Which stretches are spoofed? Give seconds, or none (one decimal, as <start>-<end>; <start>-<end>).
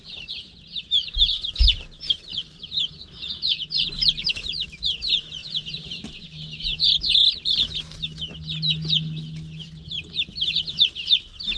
2.3-4.3